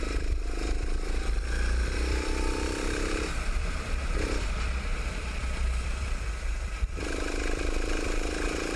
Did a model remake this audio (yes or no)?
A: yes